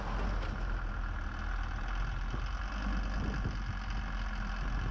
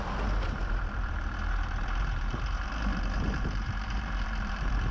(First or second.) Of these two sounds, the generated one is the second